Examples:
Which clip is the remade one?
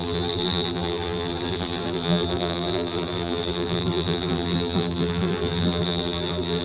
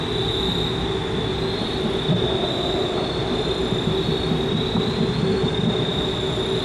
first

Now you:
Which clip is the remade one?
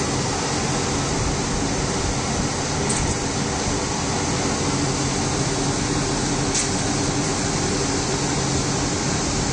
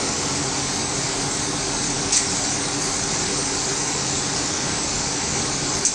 second